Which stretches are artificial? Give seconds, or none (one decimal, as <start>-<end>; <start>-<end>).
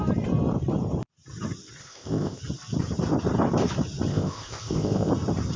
1.8-2.4; 4.1-5.1